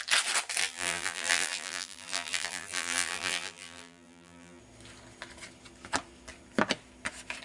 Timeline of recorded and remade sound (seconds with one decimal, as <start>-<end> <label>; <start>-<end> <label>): 0.0-0.6 recorded; 0.6-4.6 remade; 4.6-7.4 recorded

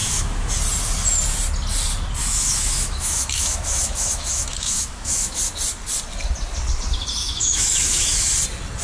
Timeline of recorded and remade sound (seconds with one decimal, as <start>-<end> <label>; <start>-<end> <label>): 0.0-0.5 remade; 0.5-2.2 recorded; 2.2-5.4 remade; 5.4-7.2 recorded; 7.2-8.3 remade; 8.3-8.8 recorded

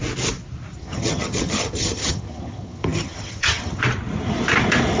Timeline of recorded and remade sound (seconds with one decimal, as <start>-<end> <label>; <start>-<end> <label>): 0.0-0.8 recorded; 0.8-3.8 remade; 3.8-5.0 recorded